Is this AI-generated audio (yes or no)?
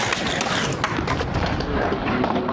no